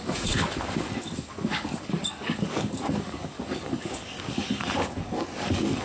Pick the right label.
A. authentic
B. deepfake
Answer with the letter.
B